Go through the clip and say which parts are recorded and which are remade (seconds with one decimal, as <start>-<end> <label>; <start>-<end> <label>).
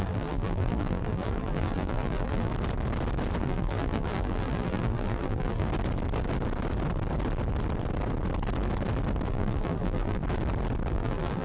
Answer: 0.0-2.5 remade; 2.5-3.4 recorded; 3.4-5.7 remade; 5.7-9.3 recorded; 9.3-10.2 remade; 10.2-10.9 recorded; 10.9-11.4 remade